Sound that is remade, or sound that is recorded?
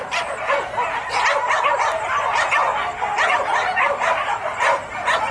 recorded